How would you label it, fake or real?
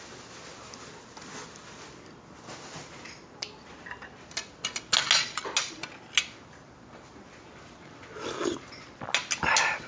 real